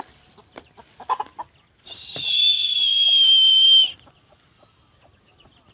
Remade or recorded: recorded